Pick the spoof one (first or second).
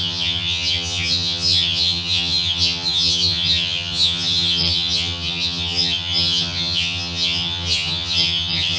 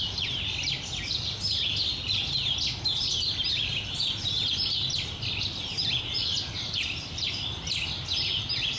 first